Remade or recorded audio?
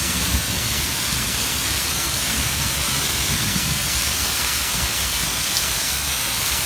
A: remade